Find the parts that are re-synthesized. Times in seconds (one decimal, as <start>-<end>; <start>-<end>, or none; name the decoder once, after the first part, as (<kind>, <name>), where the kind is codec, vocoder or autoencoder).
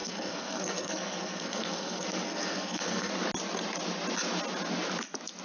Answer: 0.0-3.1 (codec, SNAC)